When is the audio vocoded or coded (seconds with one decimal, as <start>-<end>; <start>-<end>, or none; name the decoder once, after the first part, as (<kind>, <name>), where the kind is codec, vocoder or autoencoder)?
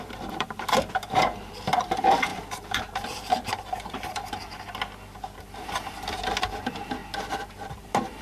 0.0-4.5 (vocoder, BigVGAN v2); 5.4-7.0; 7.7-8.2